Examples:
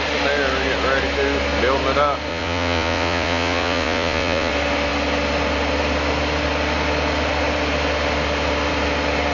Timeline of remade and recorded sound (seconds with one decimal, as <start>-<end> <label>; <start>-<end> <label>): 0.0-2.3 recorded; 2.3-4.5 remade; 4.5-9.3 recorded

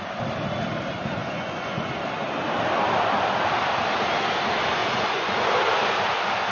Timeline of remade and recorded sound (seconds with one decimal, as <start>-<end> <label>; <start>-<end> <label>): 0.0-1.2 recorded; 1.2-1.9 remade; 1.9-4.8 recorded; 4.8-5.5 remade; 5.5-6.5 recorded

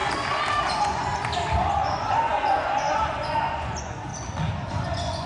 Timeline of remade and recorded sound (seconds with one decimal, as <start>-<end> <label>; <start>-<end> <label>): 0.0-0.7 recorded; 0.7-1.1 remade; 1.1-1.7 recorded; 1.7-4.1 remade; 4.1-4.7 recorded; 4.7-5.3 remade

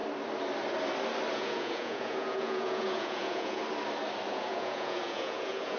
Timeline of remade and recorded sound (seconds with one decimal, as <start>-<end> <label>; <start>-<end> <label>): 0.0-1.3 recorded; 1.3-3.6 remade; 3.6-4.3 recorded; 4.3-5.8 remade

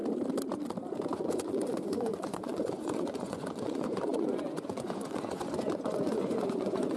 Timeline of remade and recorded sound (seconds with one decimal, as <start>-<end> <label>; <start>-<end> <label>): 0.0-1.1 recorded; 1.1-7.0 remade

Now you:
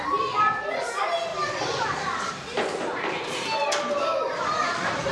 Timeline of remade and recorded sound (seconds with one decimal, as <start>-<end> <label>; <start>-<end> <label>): 0.0-5.1 recorded

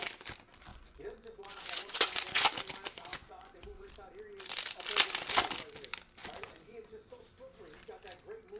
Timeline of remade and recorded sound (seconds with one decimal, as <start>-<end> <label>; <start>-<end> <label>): 0.0-0.7 recorded; 0.7-2.5 remade; 2.5-3.1 recorded; 3.1-3.9 remade; 3.9-6.2 recorded; 6.2-7.2 remade; 7.2-8.6 recorded